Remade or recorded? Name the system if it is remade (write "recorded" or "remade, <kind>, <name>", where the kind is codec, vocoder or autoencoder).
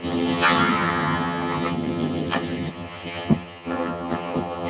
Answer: remade, vocoder, HiFi-GAN